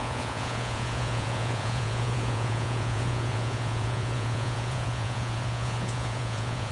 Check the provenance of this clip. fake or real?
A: fake